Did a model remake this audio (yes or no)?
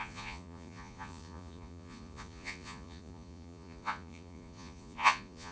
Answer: yes